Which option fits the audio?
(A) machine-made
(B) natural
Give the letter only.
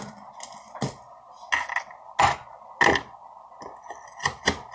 B